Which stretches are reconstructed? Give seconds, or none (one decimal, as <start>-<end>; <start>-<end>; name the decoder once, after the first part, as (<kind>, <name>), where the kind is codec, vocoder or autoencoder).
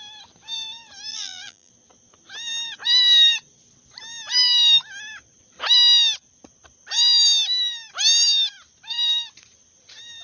1.1-1.7 (vocoder, BigVGAN v2)